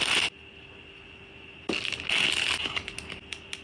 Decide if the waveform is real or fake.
real